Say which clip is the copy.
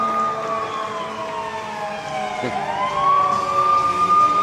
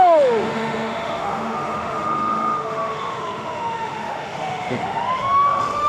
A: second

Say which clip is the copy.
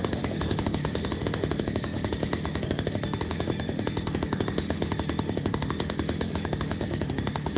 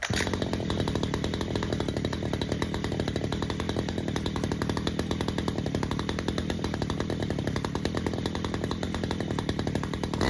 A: first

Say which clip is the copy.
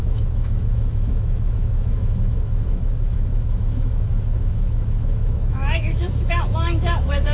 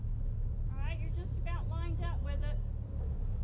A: first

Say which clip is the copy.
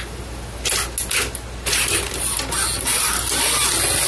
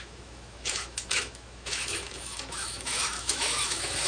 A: second